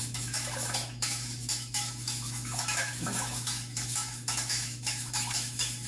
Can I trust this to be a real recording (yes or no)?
no